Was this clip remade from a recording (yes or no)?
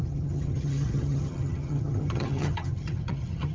yes